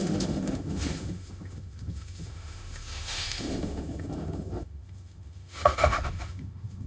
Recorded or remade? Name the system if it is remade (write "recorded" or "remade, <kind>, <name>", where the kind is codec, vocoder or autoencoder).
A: remade, autoencoder, DAC-VAE